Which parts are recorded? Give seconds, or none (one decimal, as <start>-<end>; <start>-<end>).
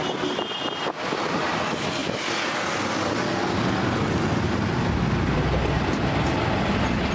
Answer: 0.0-7.1